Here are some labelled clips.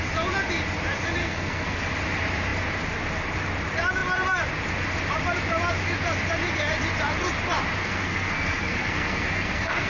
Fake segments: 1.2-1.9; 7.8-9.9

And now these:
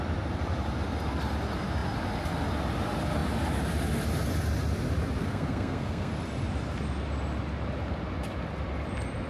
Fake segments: 5.2-6.1

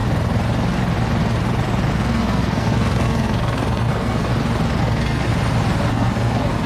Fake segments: 1.9-4.3; 4.8-5.3; 5.9-6.7

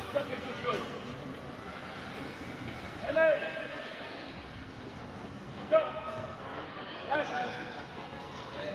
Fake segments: 0.0-1.1; 2.2-8.7